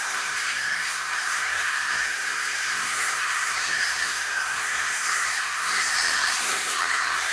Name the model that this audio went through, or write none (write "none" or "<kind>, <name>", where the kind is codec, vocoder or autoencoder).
codec, SNAC